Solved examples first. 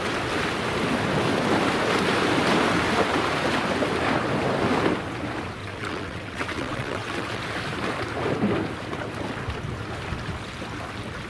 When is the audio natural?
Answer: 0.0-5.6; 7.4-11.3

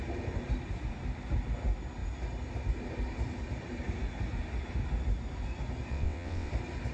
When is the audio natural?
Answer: 0.0-5.9; 6.5-6.9

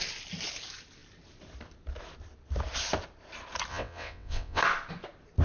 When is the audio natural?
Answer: 0.0-3.7; 4.6-5.4

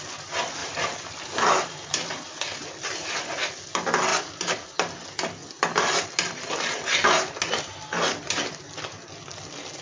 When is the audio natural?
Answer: 0.0-9.8

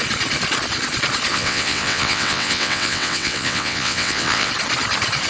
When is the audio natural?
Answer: 0.0-1.3; 4.5-5.3

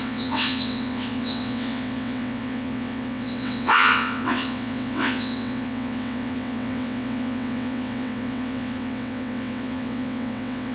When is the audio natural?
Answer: none

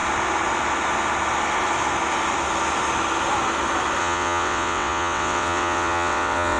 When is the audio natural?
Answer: 0.0-4.0